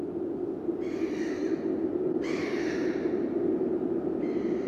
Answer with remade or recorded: recorded